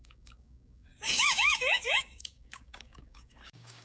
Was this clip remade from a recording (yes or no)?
yes